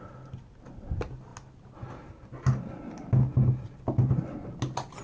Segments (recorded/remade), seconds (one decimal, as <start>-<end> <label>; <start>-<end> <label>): 0.0-5.0 recorded